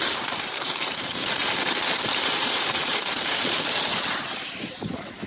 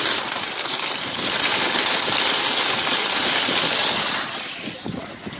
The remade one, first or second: first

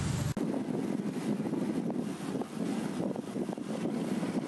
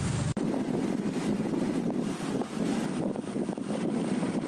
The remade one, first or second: second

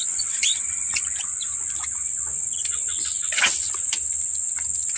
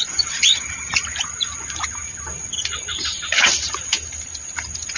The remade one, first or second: second